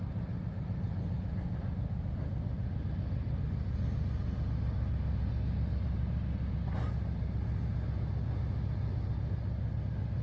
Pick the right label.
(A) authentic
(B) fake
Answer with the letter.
A